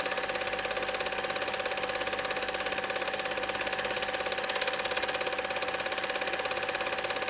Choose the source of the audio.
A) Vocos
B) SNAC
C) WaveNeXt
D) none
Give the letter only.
D